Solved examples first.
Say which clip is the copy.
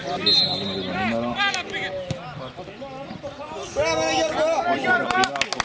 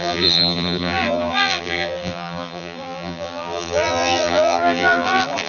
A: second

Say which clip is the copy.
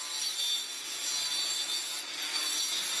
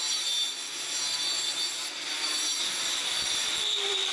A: second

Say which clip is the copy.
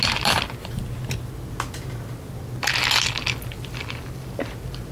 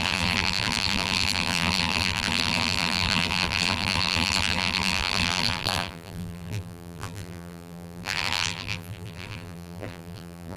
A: second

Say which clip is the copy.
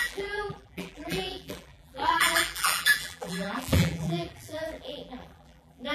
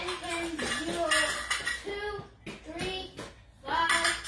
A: first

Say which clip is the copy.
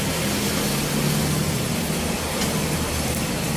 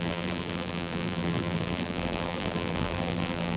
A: second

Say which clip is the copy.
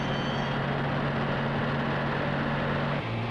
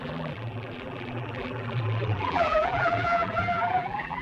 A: second